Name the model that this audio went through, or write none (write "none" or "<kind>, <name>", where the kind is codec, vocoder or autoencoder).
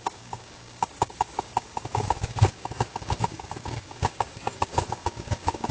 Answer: codec, DAC